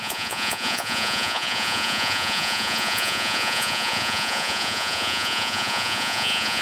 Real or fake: fake